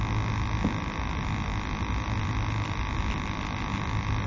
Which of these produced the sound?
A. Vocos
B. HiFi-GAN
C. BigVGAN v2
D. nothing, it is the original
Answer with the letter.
D